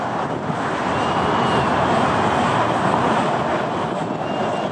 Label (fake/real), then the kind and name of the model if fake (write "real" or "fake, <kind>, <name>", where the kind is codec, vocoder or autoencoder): real